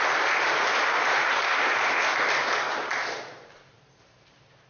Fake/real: fake